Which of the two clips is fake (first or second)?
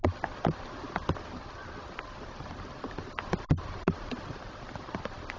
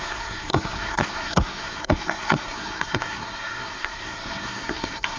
second